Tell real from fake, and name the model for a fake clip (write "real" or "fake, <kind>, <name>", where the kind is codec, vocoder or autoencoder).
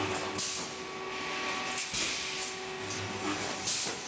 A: real